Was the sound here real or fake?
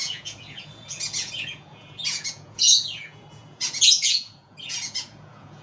fake